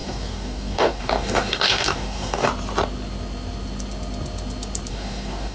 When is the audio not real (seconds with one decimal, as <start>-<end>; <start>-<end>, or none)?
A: 0.0-2.5; 4.9-5.5